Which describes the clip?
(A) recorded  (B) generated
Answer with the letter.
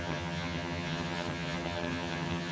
B